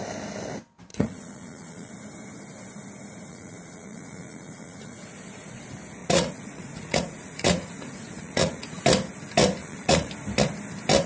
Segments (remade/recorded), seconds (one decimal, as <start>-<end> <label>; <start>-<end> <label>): 0.0-0.9 recorded; 0.9-1.9 remade; 1.9-3.3 recorded; 3.3-5.6 remade; 5.6-6.0 recorded; 6.0-8.8 remade; 8.8-9.6 recorded; 9.6-10.1 remade; 10.1-11.1 recorded